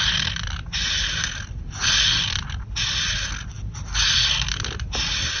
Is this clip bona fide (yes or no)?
yes